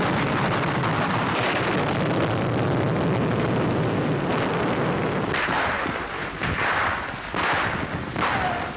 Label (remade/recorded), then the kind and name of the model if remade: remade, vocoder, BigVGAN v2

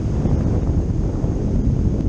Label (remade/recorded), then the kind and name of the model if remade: recorded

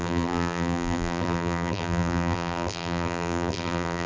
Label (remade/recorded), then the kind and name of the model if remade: remade, vocoder, BigVGAN v2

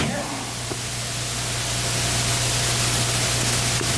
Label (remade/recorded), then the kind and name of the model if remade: recorded